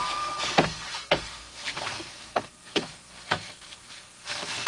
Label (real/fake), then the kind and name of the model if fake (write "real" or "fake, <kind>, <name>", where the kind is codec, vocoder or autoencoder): fake, codec, SNAC